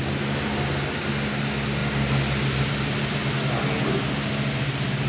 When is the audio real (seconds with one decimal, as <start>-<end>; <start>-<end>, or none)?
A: 0.0-5.1